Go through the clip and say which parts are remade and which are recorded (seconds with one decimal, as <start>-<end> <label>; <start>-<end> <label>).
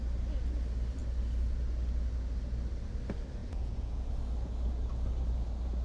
0.0-3.4 recorded; 3.4-4.1 remade; 4.1-5.8 recorded